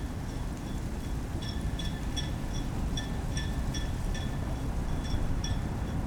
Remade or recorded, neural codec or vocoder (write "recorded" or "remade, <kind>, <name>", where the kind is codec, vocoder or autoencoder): recorded